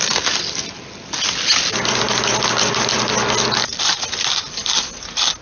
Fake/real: real